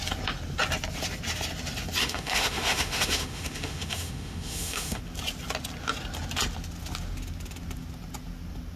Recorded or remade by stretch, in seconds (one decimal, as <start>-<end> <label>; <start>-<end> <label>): 0.0-2.0 recorded; 2.0-5.0 remade; 5.0-8.8 recorded